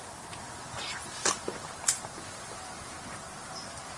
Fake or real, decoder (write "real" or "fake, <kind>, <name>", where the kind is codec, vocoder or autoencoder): fake, vocoder, BigVGAN v2